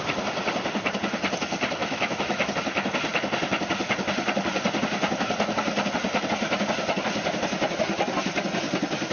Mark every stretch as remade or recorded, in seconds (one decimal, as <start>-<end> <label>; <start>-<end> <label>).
0.0-1.8 recorded; 1.8-2.5 remade; 2.5-9.1 recorded